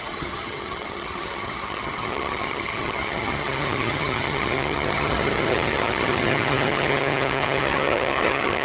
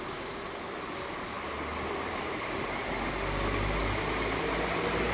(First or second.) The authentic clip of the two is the second